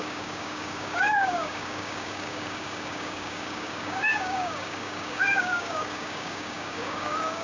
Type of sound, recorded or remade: remade